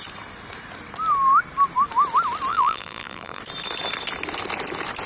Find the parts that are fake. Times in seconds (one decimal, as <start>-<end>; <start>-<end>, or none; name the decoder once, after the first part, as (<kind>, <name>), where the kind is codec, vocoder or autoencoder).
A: 2.5-3.4 (vocoder, BigVGAN v2)